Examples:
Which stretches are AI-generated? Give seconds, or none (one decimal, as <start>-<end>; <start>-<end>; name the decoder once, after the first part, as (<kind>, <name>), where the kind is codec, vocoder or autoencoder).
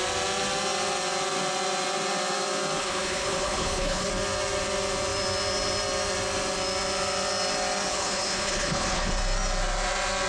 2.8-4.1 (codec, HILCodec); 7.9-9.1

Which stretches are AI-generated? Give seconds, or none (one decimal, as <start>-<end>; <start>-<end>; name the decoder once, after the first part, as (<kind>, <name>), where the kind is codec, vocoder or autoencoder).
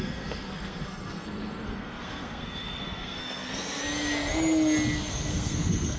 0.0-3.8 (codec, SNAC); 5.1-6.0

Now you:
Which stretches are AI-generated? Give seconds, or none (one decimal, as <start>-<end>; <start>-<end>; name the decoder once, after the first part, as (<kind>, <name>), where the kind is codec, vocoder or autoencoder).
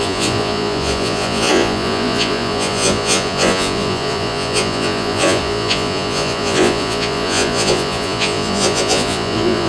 0.0-9.7 (vocoder, Vocos)